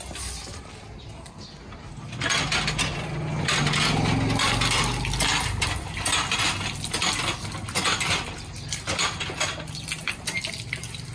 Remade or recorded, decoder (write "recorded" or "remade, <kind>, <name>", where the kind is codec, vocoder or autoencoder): recorded